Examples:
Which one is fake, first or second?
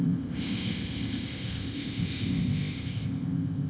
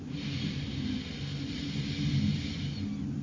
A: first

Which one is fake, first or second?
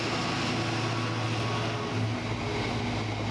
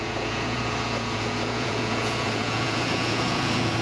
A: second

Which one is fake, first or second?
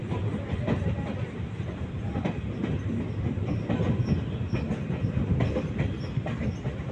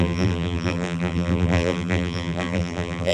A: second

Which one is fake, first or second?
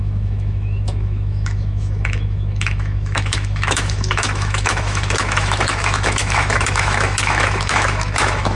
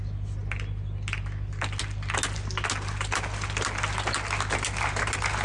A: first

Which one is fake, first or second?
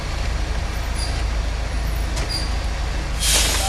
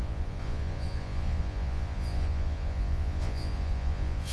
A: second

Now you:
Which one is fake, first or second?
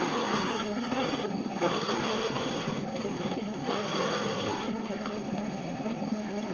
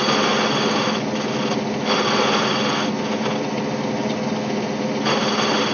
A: first